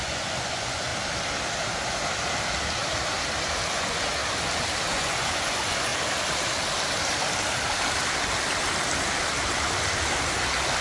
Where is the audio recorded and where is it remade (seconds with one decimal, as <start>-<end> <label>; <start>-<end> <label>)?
0.0-0.9 remade; 0.9-3.7 recorded; 3.7-4.2 remade; 4.2-4.9 recorded; 4.9-5.9 remade; 5.9-10.8 recorded